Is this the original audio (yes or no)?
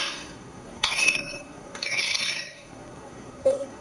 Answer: no